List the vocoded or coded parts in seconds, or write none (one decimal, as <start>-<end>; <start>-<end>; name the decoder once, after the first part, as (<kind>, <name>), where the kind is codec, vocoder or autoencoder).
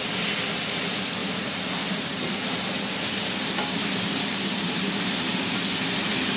none